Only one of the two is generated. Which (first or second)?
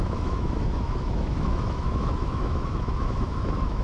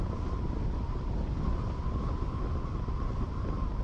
first